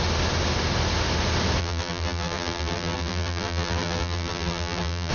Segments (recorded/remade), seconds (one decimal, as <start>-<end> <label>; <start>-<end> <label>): 0.0-1.6 recorded; 1.6-5.1 remade